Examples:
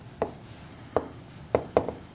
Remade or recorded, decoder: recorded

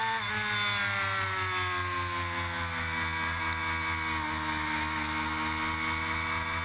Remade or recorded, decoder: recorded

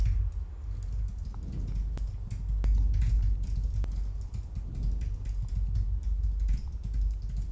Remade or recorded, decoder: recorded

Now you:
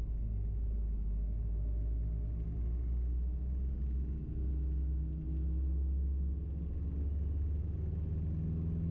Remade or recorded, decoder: recorded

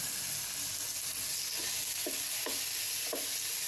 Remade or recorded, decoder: recorded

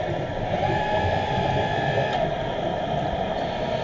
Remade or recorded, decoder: recorded